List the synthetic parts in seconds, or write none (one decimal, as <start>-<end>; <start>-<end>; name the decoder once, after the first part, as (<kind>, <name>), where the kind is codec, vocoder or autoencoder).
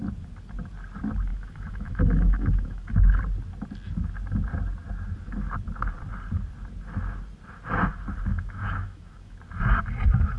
1.3-3.2 (autoencoder, DAC-VAE); 8.3-9.4